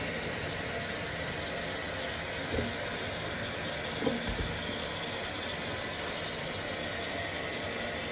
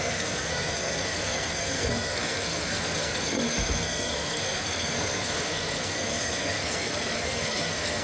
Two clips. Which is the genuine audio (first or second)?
first